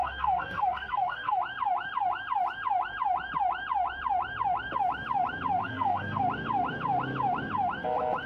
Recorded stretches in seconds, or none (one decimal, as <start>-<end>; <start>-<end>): 1.4-5.6; 6.2-8.3